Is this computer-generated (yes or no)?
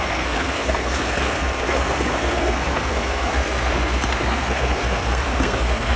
yes